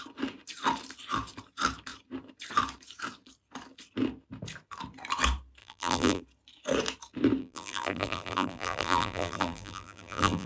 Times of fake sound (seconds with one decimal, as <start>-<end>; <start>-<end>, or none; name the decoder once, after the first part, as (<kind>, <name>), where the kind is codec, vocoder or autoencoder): 5.6-6.2 (vocoder, BigVGAN v2); 7.4-10.5